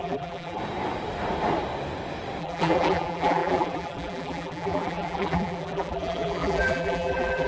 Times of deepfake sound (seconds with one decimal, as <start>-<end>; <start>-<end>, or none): 0.0-0.6; 2.4-7.5